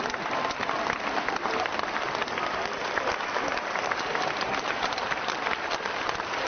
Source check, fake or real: real